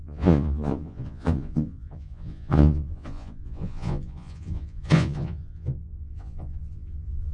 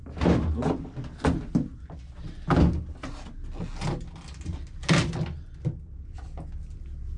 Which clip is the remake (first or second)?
first